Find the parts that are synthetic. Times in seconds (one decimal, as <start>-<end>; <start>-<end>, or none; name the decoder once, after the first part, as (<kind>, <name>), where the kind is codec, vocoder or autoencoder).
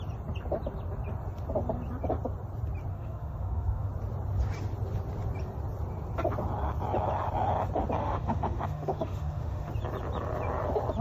2.9-3.9 (autoencoder, DAC-VAE); 8.0-9.7